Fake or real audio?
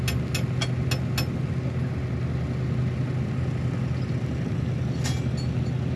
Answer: real